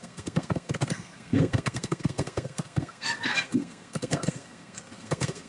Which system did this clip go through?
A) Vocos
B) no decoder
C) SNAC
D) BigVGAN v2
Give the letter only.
C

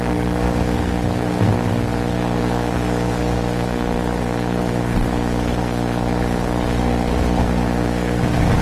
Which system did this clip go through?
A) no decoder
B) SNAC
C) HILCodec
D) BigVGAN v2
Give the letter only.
B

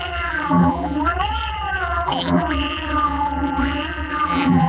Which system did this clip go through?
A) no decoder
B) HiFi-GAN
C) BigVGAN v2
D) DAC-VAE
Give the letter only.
C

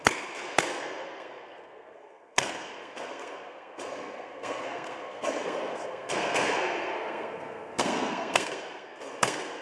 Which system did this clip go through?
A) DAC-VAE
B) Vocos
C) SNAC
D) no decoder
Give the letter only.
C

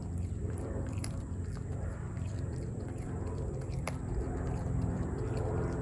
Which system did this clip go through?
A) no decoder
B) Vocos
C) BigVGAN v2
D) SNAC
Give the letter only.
C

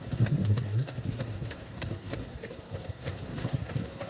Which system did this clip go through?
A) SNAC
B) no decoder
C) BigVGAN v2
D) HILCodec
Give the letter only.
A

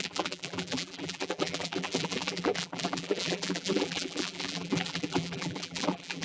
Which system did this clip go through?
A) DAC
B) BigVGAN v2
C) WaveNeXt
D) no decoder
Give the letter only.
B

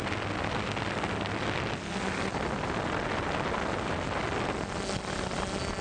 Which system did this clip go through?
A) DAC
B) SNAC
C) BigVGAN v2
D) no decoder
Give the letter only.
D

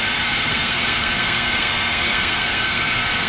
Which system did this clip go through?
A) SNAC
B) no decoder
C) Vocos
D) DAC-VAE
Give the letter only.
A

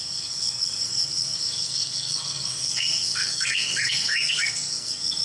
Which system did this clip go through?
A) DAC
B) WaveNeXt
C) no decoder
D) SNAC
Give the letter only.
D